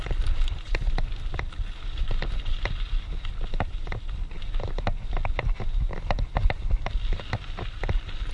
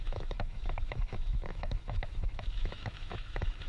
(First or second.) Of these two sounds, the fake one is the second